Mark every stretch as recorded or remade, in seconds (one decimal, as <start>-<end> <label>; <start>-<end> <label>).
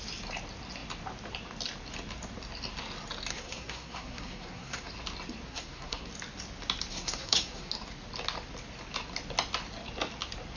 0.0-3.3 recorded; 3.3-4.9 remade; 4.9-5.5 recorded; 5.5-6.1 remade; 6.1-6.9 recorded; 6.9-7.7 remade; 7.7-10.6 recorded